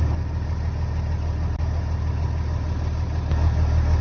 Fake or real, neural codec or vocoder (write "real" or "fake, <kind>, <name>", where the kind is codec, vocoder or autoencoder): real